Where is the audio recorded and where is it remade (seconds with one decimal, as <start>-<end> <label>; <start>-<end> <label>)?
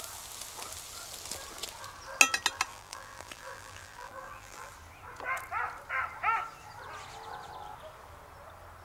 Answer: 0.0-2.7 recorded; 2.7-4.7 remade; 4.7-8.8 recorded